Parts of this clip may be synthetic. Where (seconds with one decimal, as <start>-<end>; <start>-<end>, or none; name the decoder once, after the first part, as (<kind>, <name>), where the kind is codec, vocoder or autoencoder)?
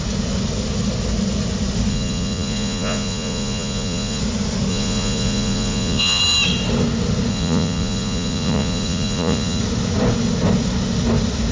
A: 1.9-4.2 (vocoder, Vocos); 4.7-6.2; 7.3-9.6